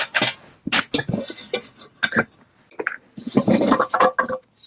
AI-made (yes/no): no